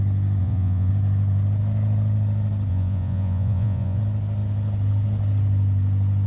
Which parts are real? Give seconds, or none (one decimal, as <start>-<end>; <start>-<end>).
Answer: 0.0-0.4; 0.9-2.7; 4.0-6.3